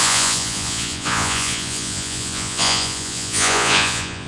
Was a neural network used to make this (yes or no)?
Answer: yes